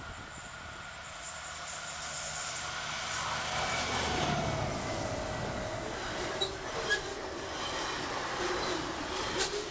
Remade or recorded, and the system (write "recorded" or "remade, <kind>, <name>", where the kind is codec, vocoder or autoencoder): recorded